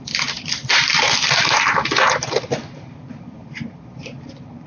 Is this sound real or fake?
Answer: fake